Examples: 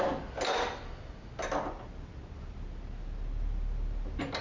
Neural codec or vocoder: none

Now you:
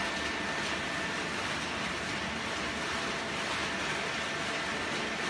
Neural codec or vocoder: none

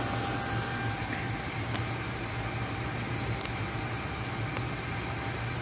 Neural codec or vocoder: none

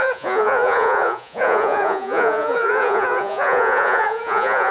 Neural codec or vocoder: vocoder, Vocos